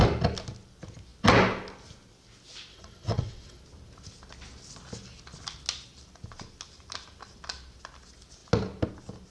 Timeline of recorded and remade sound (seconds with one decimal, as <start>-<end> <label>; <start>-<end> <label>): 0.0-2.7 recorded; 2.7-3.6 remade; 3.6-9.3 recorded